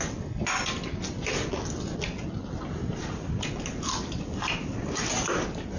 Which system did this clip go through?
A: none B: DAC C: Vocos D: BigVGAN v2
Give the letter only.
A